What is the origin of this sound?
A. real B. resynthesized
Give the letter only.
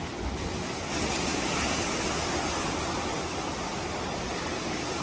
A